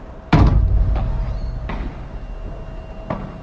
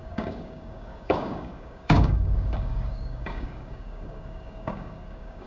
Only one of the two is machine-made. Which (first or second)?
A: second